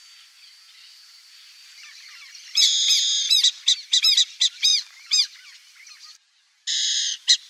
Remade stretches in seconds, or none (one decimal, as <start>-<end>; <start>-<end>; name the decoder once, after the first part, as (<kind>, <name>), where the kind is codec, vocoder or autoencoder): 0.9-2.7 (vocoder, BigVGAN v2); 4.7-5.4